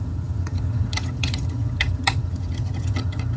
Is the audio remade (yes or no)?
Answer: yes